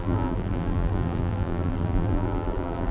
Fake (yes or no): yes